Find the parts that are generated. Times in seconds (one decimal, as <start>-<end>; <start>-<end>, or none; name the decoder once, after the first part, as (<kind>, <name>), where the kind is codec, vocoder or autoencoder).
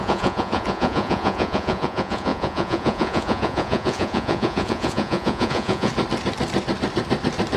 0.0-5.9 (vocoder, Vocos)